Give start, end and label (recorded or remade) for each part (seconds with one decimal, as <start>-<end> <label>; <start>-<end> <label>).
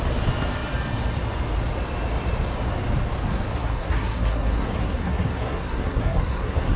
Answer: 0.0-3.5 recorded; 3.5-6.8 remade